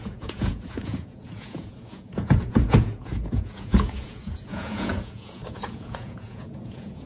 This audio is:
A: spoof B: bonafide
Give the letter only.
A